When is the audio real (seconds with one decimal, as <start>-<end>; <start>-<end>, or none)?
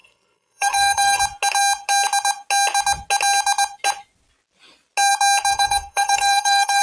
1.2-5.5